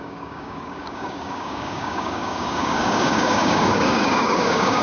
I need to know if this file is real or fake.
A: fake